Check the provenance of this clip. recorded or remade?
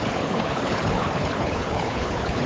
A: remade